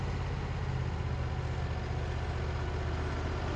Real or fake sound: real